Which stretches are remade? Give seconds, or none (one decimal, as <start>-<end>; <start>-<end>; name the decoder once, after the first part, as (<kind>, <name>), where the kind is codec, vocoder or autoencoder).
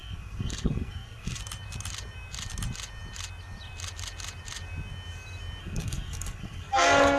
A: 0.0-1.4 (codec, SNAC); 5.6-6.7